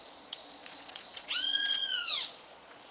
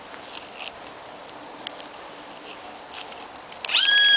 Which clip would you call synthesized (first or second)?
first